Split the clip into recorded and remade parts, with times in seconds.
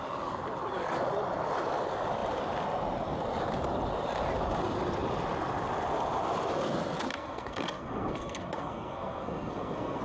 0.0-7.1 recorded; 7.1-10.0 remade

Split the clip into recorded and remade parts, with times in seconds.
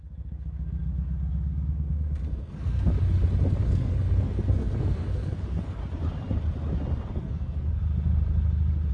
0.0-2.9 remade; 2.9-3.6 recorded; 3.6-5.8 remade; 5.8-7.1 recorded; 7.1-7.8 remade; 7.8-8.9 recorded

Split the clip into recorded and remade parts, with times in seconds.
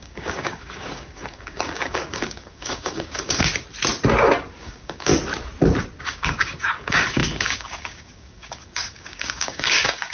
0.0-3.5 remade; 3.5-4.6 recorded; 4.6-5.1 remade; 5.1-6.0 recorded; 6.0-10.1 remade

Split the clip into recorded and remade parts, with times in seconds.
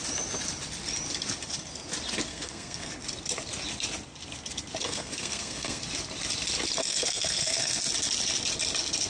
0.0-2.3 recorded; 2.3-2.9 remade; 2.9-4.8 recorded; 4.8-5.8 remade; 5.8-6.8 recorded; 6.8-7.8 remade; 7.8-9.1 recorded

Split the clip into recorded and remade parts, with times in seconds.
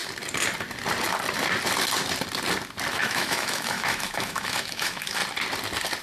0.0-2.9 recorded; 2.9-5.2 remade; 5.2-6.0 recorded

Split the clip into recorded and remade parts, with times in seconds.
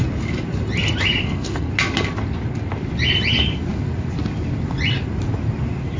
0.0-1.2 recorded; 1.2-1.7 remade; 1.7-6.0 recorded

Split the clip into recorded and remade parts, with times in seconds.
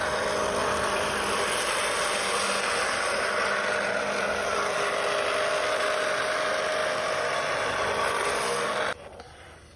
0.0-0.6 recorded; 0.6-2.4 remade; 2.4-6.8 recorded; 6.8-9.8 remade